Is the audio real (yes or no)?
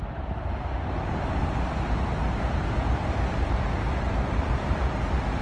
yes